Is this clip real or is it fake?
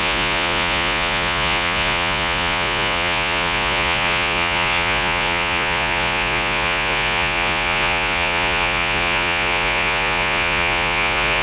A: fake